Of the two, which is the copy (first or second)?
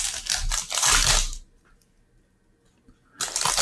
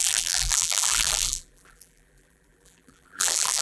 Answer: second